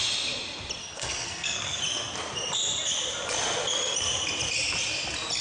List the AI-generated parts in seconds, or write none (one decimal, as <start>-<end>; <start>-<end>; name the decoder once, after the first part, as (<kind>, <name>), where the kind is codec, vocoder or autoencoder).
0.8-1.8 (codec, SNAC)